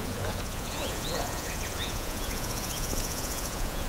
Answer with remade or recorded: remade